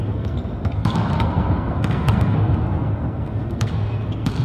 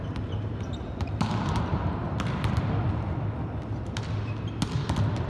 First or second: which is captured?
second